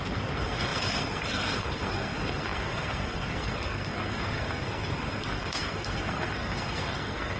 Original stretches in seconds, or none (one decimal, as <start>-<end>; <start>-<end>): none